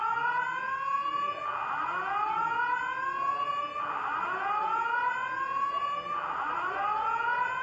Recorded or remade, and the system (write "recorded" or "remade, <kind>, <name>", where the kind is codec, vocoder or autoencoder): recorded